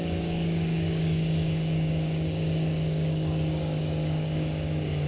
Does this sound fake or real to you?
fake